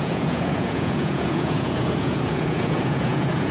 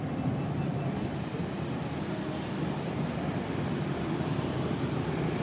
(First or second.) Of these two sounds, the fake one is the first